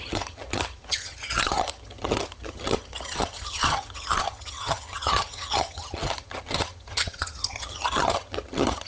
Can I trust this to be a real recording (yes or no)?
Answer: no